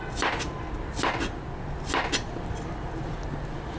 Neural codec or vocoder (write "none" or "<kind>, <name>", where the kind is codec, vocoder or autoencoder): none